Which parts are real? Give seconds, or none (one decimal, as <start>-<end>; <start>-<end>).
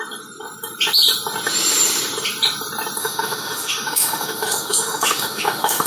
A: 0.0-3.0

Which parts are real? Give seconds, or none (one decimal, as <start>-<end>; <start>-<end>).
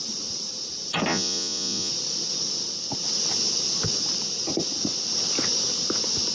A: 0.0-1.1; 1.9-6.3